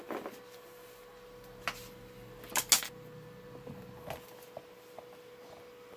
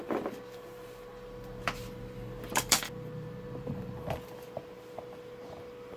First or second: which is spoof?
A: second